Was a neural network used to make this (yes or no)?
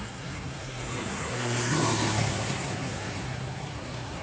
yes